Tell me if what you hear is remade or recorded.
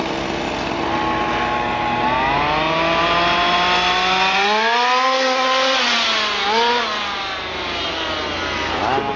recorded